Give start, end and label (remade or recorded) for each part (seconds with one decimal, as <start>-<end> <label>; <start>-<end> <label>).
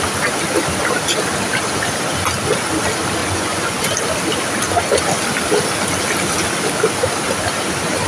0.0-3.2 recorded; 3.2-3.8 remade; 3.8-8.1 recorded